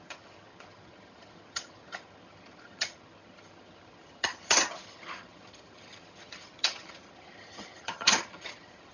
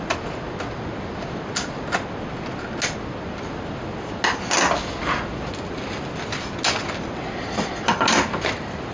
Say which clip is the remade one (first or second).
first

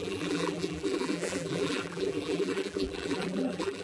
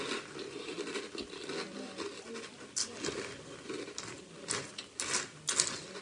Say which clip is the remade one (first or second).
first